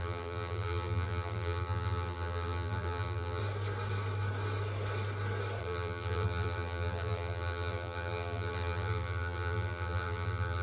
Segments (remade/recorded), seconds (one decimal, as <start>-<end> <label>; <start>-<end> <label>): 0.0-3.4 remade; 3.4-5.6 recorded; 5.6-10.6 remade